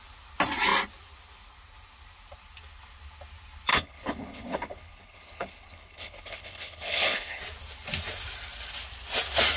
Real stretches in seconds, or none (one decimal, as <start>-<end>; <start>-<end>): 0.0-3.7; 7.4-9.6